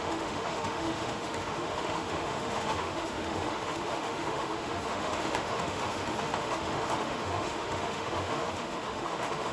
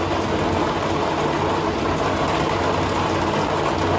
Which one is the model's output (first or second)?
first